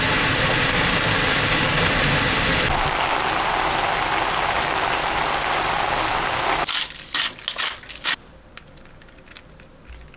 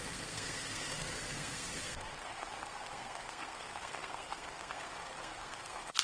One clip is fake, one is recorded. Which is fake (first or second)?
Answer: second